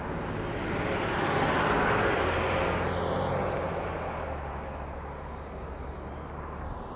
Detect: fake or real real